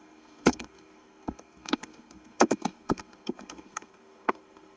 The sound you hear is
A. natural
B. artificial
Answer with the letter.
B